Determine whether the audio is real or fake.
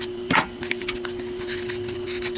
real